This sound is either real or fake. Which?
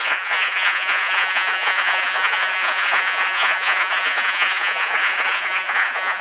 fake